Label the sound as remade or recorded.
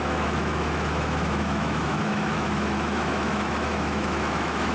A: remade